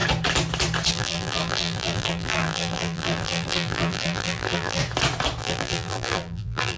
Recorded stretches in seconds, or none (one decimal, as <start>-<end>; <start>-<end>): 0.0-0.9; 4.8-5.4